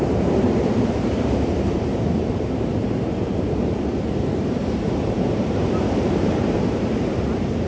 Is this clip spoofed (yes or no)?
yes